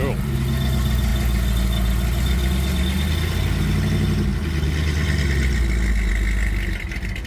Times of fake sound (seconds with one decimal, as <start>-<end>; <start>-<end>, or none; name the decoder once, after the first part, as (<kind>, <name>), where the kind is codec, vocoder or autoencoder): none